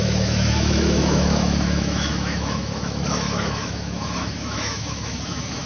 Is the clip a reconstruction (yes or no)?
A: yes